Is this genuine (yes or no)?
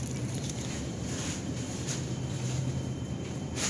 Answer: no